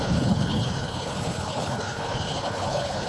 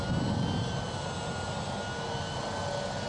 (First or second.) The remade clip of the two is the first